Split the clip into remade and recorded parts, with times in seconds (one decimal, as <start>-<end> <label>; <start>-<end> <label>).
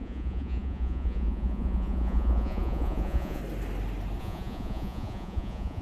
0.0-3.4 remade; 3.4-4.2 recorded; 4.2-5.8 remade